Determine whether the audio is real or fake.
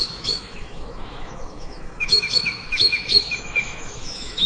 fake